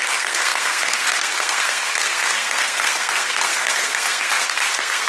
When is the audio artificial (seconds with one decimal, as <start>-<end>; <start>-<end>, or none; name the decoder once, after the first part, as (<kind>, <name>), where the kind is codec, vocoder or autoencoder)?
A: 0.0-5.1 (codec, SNAC)